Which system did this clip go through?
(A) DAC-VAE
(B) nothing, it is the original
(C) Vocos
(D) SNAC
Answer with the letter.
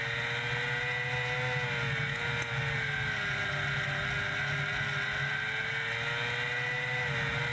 B